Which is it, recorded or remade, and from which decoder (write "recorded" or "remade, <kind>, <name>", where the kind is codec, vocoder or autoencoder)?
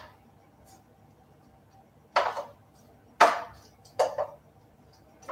recorded